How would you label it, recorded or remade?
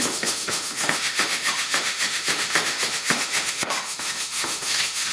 remade